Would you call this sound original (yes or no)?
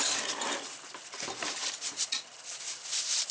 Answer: yes